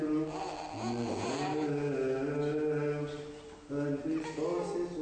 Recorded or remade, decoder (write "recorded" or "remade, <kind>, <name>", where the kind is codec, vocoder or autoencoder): recorded